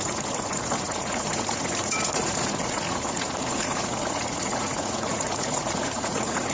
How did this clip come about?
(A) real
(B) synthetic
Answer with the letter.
B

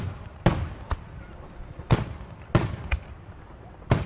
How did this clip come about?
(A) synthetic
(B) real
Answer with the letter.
A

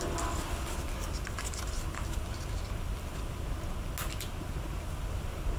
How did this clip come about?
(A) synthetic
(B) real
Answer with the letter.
B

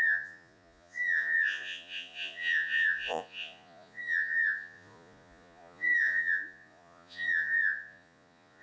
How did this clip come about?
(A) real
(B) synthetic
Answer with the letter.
B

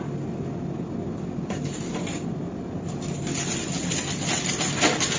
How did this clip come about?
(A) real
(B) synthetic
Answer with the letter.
A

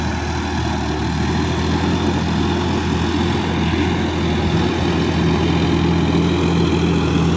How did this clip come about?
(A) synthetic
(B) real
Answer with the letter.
B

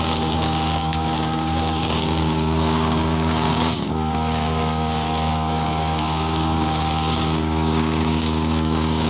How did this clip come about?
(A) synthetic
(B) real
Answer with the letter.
A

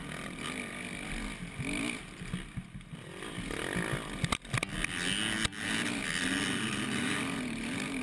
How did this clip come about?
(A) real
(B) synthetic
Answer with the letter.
A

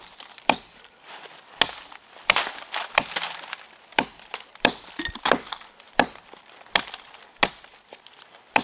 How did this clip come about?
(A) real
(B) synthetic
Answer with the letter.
A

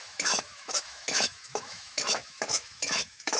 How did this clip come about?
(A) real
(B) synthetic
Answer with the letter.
B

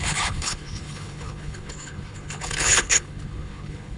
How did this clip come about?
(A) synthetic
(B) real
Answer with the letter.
A